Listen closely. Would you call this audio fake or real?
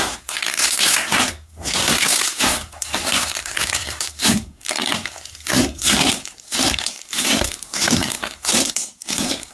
fake